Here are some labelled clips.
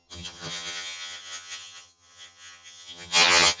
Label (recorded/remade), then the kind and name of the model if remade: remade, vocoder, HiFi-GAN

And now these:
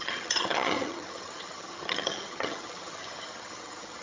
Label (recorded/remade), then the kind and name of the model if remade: remade, vocoder, HiFi-GAN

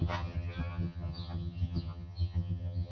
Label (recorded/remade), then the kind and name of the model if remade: remade, vocoder, HiFi-GAN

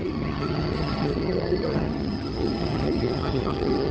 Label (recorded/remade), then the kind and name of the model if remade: remade, vocoder, HiFi-GAN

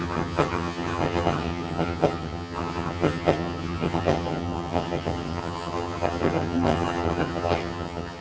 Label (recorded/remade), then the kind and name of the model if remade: remade, vocoder, HiFi-GAN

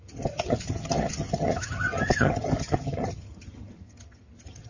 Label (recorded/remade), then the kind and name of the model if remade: remade, vocoder, HiFi-GAN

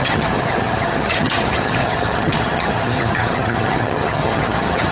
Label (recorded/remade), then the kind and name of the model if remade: remade, vocoder, HiFi-GAN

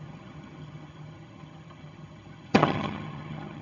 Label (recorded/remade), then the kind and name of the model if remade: remade, vocoder, HiFi-GAN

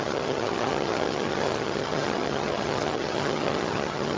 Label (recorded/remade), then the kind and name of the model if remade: remade, vocoder, HiFi-GAN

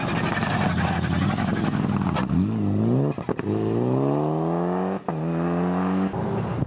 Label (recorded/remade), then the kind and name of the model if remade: recorded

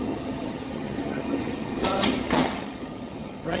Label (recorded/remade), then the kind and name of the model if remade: remade, vocoder, HiFi-GAN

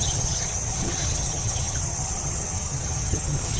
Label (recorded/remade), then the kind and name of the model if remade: remade, vocoder, HiFi-GAN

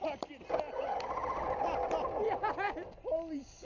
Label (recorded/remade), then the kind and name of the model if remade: recorded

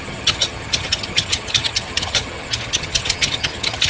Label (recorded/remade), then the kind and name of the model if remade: remade, vocoder, HiFi-GAN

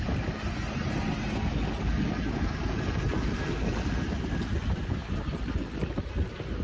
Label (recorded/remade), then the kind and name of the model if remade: recorded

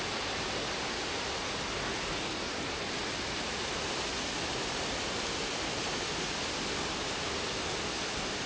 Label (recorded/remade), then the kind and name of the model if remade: recorded